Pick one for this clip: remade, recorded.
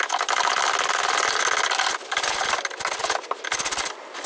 recorded